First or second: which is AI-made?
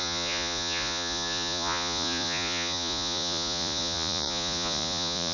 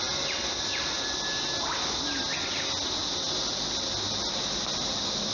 first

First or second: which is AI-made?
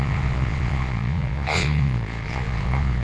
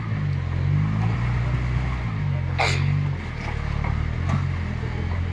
first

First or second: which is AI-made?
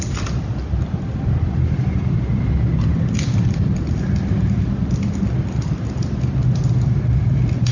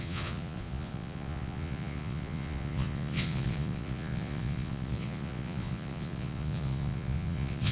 second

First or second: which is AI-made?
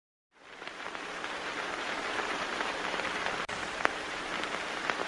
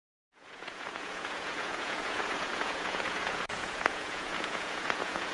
second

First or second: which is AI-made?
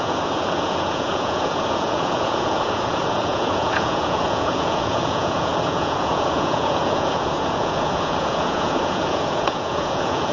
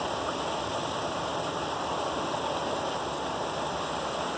first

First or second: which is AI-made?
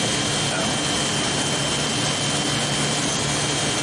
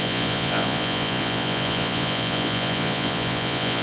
second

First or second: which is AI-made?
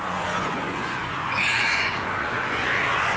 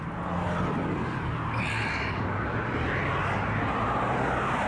first